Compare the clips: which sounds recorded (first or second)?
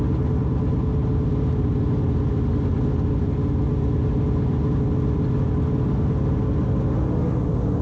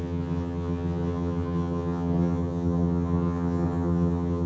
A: first